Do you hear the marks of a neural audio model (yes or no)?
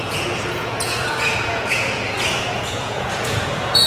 yes